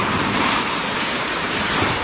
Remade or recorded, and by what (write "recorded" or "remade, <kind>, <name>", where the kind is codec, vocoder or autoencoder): remade, vocoder, BigVGAN v2